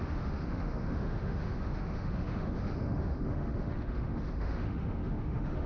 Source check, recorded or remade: remade